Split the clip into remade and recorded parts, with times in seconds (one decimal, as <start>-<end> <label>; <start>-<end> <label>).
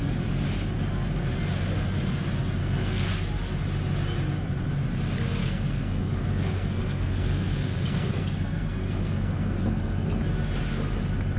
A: 0.0-2.6 recorded; 2.6-3.1 remade; 3.1-5.4 recorded; 5.4-10.2 remade; 10.2-11.4 recorded